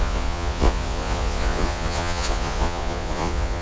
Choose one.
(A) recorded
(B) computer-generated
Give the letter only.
B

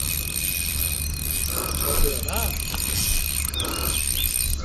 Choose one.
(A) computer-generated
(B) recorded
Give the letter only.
A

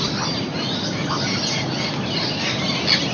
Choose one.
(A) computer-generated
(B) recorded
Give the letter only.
B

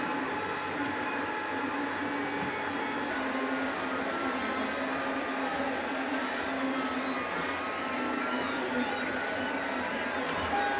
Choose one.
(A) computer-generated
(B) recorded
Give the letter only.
B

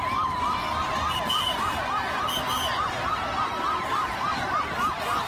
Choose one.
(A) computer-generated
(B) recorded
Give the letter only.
B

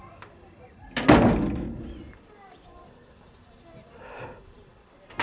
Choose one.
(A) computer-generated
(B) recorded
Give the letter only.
B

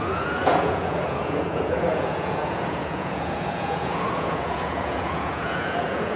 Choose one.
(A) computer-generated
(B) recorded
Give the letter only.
A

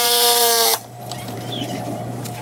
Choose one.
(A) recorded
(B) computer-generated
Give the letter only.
B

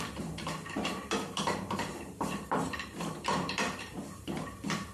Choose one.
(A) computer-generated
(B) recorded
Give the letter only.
A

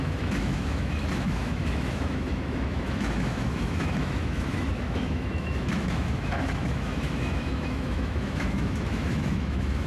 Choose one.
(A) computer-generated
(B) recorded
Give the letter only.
A